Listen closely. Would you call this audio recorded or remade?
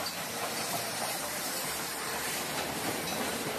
remade